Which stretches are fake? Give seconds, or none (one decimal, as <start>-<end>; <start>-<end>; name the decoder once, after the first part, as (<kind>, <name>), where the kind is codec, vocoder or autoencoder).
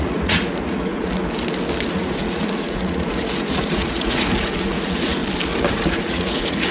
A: 0.0-1.1 (vocoder, Vocos); 1.9-5.2; 5.7-6.7